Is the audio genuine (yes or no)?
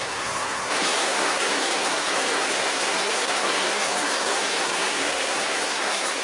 no